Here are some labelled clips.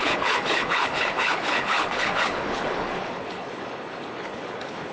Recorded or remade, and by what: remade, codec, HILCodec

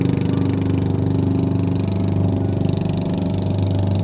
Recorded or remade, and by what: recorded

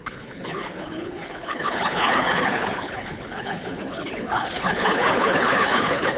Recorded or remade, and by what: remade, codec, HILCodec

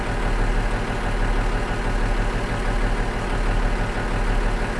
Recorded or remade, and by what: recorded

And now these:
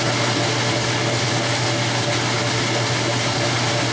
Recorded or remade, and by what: recorded